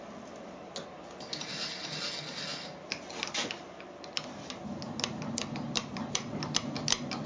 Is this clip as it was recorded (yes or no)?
yes